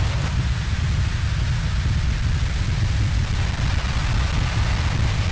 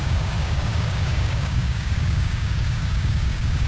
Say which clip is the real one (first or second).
first